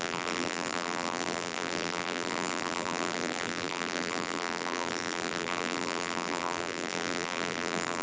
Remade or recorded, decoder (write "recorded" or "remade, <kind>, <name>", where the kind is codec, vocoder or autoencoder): remade, vocoder, BigVGAN v2